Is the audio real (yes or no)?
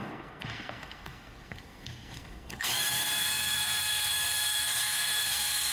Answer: no